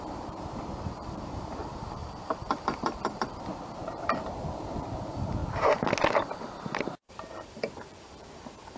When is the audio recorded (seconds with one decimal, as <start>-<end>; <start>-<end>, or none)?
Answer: 3.5-5.0; 5.4-7.1